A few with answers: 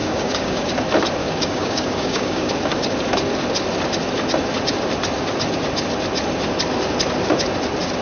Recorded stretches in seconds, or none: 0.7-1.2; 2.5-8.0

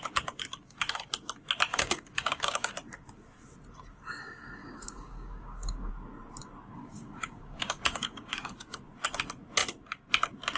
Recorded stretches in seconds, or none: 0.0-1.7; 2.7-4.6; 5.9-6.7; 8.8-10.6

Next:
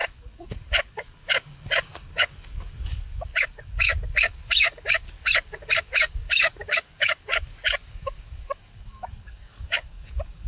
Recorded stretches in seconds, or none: none